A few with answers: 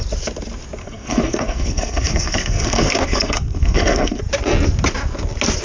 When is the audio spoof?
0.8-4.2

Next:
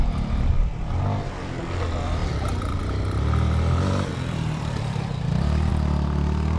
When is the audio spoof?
2.2-2.8; 4.1-5.7